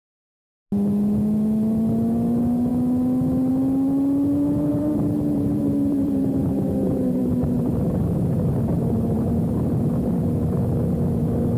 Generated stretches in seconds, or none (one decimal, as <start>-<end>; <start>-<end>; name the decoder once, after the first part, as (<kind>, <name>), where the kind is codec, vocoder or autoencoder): 4.7-9.7 (vocoder, BigVGAN v2)